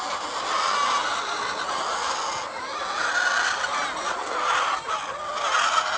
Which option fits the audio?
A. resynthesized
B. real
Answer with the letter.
B